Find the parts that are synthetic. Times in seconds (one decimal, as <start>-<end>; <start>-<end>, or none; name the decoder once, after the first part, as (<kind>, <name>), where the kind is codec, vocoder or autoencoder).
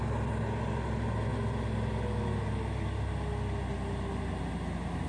none